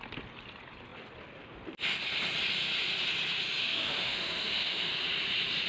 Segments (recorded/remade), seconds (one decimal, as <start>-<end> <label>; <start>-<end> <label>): 0.0-3.6 recorded; 3.6-4.9 remade; 4.9-5.7 recorded